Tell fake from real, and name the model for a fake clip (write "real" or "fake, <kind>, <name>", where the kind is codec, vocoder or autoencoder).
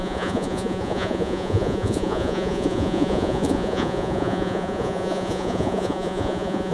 fake, vocoder, Vocos